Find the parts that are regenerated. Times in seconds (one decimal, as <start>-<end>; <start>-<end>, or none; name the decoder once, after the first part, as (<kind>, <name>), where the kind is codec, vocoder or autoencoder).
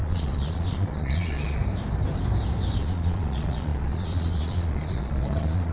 0.0-1.6 (vocoder, Vocos); 2.8-5.7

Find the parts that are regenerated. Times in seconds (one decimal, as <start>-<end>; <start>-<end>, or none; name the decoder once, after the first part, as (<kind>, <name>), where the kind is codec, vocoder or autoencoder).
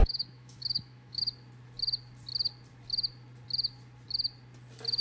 0.0-1.2 (autoencoder, DAC-VAE)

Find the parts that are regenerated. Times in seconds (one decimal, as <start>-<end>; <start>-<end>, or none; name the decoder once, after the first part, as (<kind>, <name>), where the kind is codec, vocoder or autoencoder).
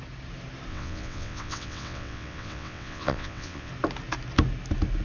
0.7-3.7 (vocoder, WaveNeXt)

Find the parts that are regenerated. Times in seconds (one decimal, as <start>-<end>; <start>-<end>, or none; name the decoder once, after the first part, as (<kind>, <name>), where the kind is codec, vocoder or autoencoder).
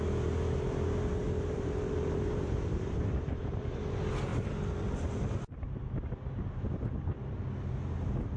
1.2-3.7 (vocoder, BigVGAN v2)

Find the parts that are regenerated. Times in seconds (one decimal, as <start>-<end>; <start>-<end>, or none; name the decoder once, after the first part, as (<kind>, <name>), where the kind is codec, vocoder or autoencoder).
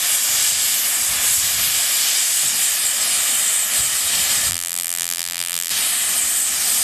4.5-5.7 (vocoder, BigVGAN v2)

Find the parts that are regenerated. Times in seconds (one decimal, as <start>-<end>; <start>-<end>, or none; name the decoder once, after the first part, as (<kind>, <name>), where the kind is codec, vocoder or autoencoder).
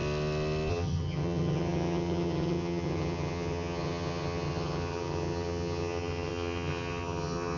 0.7-7.6 (vocoder, HiFi-GAN)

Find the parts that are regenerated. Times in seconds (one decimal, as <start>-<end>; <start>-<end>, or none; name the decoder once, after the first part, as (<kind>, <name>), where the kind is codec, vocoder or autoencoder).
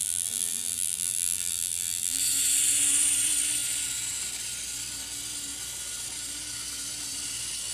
0.0-2.2 (vocoder, BigVGAN v2)